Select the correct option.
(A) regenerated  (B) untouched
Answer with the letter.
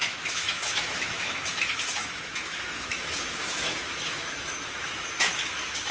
A